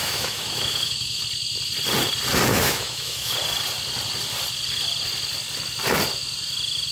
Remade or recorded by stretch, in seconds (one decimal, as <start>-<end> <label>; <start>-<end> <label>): 0.0-1.2 remade; 1.2-2.5 recorded; 2.5-3.3 remade; 3.3-6.9 recorded